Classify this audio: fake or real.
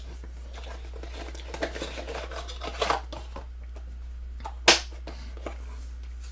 real